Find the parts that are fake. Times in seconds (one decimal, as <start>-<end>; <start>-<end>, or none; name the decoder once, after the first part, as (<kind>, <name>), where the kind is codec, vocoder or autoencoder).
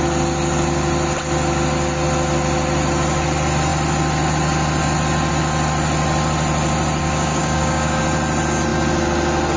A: 7.0-8.0 (codec, DAC)